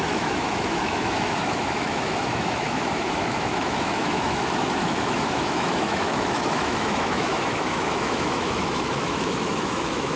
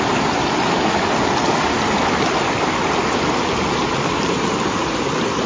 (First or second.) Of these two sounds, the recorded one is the second